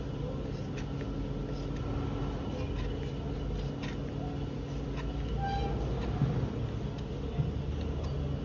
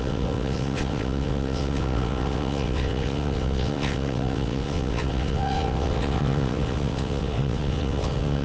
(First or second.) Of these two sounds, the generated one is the second